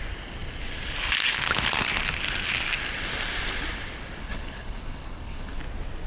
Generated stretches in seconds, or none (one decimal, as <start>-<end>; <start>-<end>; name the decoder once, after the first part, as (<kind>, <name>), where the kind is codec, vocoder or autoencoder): 4.2-5.6 (codec, HILCodec)